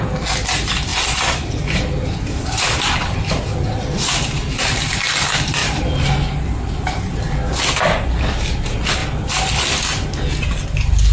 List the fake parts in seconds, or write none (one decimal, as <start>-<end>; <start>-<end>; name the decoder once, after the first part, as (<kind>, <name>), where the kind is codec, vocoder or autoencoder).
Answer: 5.6-7.1 (vocoder, BigVGAN v2)